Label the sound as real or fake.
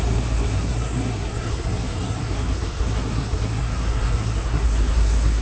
fake